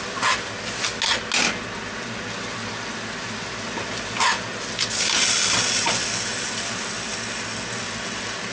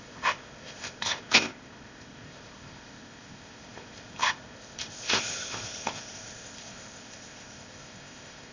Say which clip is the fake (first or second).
second